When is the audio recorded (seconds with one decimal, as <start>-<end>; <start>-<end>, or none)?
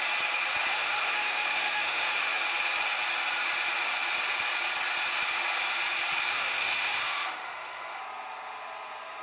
0.0-0.7; 2.4-6.3; 8.0-9.2